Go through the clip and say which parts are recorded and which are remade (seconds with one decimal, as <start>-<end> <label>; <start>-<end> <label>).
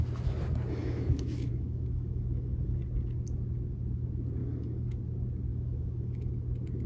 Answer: 0.0-0.8 recorded; 0.8-2.8 remade; 2.8-4.4 recorded; 4.4-5.0 remade; 5.0-5.5 recorded; 5.5-6.3 remade; 6.3-6.9 recorded